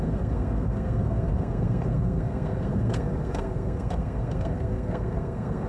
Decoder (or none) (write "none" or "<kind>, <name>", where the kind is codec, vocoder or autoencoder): codec, SNAC